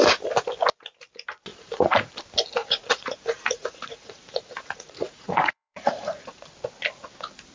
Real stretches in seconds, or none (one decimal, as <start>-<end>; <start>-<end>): 0.0-1.5; 2.1-2.6; 6.4-7.5